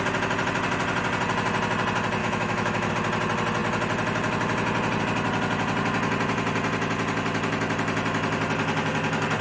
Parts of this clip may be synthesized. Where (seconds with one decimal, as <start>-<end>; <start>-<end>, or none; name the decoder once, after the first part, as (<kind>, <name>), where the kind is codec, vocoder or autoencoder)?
2.2-2.9 (autoencoder, DAC-VAE)